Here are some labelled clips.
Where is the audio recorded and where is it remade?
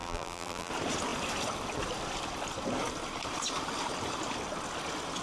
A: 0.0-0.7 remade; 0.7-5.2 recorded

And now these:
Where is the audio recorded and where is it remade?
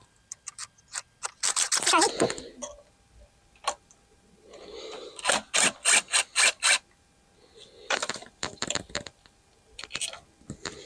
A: 0.0-0.6 remade; 0.6-1.9 recorded; 1.9-2.6 remade; 2.6-7.8 recorded; 7.8-10.9 remade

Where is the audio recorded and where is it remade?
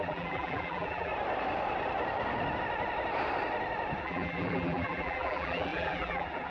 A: 0.0-1.1 remade; 1.1-4.0 recorded; 4.0-6.5 remade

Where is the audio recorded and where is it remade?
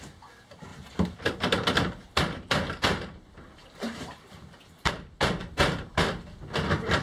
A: 0.0-0.7 recorded; 0.7-4.9 remade; 4.9-5.4 recorded; 5.4-6.0 remade; 6.0-7.0 recorded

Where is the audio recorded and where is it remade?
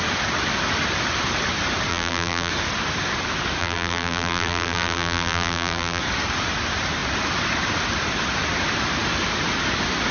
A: 0.0-1.9 recorded; 1.9-2.5 remade; 2.5-3.6 recorded; 3.6-6.0 remade; 6.0-10.1 recorded